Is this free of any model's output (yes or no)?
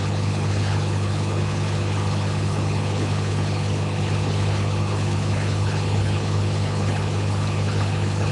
no